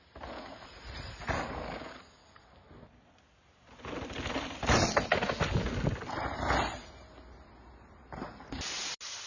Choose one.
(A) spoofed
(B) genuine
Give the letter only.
B